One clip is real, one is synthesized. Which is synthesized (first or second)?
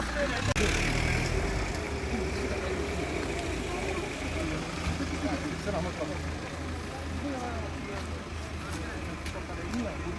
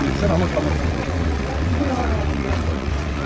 second